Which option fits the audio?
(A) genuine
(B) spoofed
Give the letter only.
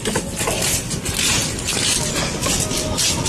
A